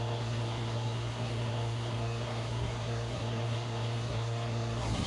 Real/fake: fake